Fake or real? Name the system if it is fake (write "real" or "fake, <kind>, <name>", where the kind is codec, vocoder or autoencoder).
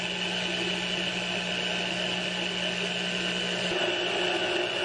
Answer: real